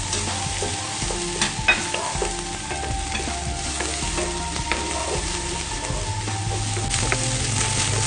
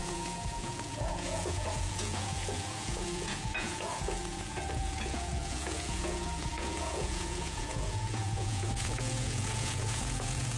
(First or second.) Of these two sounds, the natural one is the first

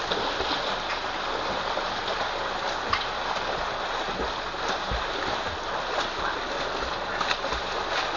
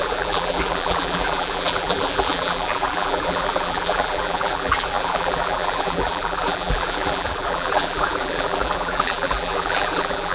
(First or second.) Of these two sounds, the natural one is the first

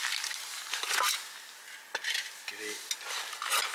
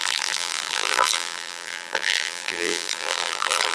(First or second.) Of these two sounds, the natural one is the first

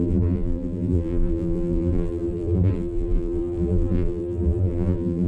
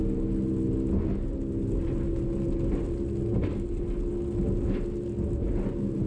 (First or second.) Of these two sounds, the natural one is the second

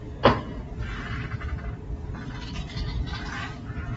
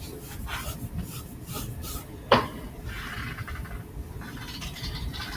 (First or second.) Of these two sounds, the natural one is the first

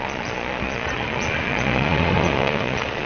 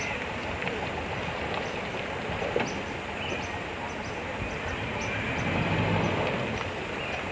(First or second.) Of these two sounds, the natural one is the second